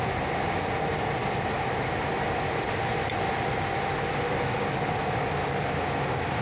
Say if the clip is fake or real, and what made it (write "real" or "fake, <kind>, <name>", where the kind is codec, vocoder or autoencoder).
real